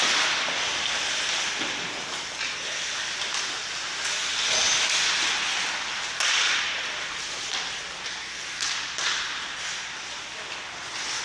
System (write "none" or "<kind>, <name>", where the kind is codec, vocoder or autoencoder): none